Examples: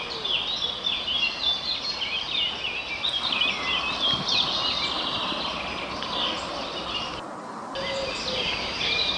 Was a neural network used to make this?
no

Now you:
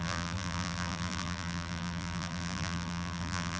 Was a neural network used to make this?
yes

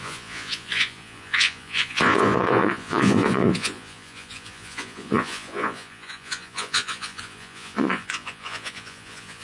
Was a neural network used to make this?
yes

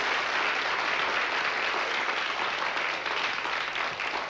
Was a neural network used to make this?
no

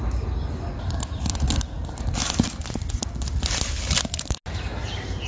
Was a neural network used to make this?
no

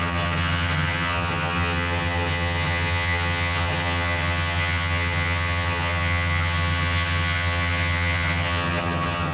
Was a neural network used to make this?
yes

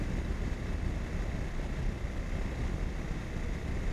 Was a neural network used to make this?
no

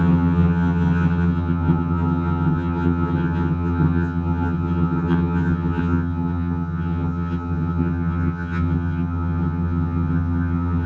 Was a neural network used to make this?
yes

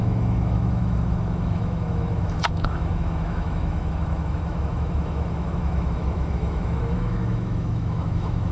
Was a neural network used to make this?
yes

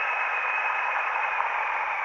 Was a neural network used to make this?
no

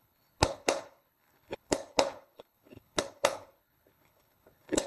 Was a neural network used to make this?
yes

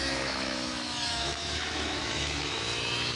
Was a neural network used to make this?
yes